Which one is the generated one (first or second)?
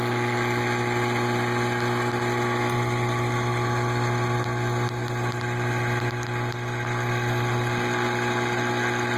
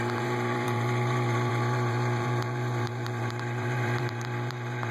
second